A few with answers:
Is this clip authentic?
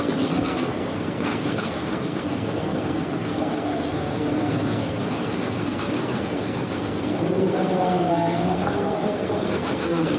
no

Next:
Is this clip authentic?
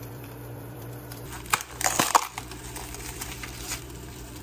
no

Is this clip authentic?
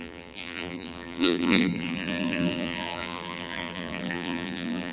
no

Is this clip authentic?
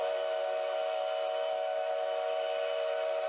yes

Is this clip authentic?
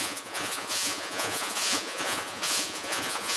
no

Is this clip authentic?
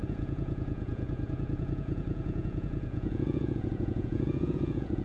no